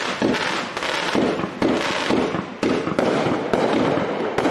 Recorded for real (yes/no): yes